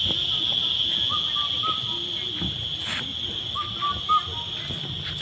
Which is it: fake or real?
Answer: real